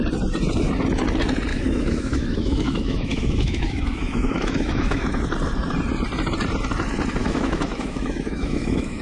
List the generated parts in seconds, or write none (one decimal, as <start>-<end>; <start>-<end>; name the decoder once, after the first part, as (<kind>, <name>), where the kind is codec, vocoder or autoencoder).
1.5-5.2 (autoencoder, DAC-VAE); 7.2-9.0

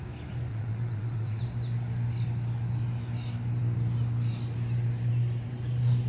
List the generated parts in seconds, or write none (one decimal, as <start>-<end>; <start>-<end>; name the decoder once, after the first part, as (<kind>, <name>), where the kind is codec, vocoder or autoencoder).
0.5-1.4 (vocoder, WaveNeXt)

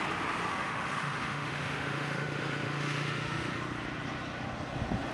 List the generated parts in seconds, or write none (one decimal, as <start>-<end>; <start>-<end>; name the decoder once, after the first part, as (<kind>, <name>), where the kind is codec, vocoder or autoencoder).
0.5-3.6 (autoencoder, DAC-VAE)

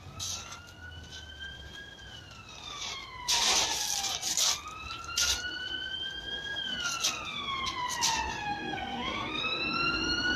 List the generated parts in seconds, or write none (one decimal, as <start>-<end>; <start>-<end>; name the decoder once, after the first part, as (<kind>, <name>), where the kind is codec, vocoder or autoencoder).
8.4-9.4 (codec, SNAC)

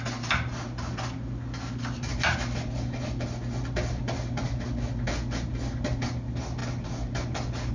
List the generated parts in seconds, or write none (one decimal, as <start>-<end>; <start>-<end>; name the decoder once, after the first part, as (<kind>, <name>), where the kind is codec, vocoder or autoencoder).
none

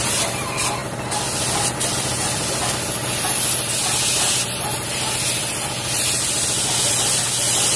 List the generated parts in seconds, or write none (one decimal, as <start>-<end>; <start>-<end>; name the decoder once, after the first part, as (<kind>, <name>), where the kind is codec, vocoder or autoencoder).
none